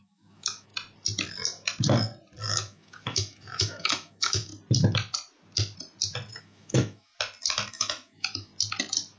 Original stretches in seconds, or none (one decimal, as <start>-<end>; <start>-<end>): 0.7-2.5; 4.5-6.4; 7.1-7.7; 8.5-9.2